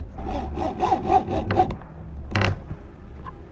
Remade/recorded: recorded